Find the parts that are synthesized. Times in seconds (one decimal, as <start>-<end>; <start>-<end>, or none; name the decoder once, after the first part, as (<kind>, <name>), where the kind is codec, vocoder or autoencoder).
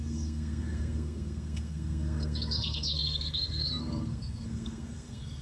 0.0-5.4 (codec, SNAC)